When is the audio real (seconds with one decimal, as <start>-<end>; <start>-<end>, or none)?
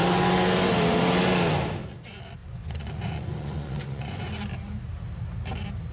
0.0-2.4; 4.3-5.9